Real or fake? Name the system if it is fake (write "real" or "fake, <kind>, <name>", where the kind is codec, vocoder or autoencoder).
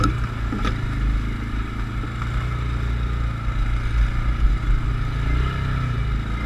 real